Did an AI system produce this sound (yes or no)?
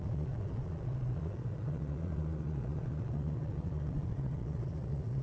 yes